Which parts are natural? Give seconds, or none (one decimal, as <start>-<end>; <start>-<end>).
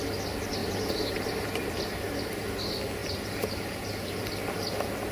0.0-0.6; 1.8-3.0; 4.2-5.1